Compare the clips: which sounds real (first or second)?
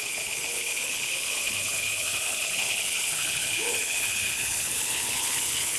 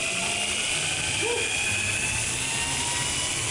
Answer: second